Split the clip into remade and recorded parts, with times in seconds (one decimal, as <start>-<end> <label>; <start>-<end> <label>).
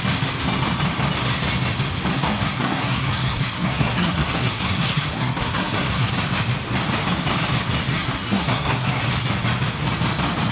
0.0-2.1 recorded; 2.1-6.1 remade; 6.1-7.9 recorded; 7.9-9.0 remade; 9.0-10.5 recorded